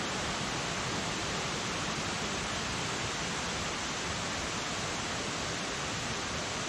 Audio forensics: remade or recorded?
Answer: recorded